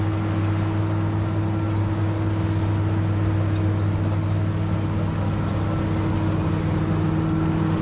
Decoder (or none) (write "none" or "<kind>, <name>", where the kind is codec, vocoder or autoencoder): none